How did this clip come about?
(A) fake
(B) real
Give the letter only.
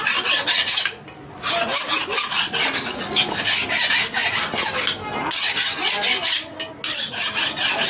B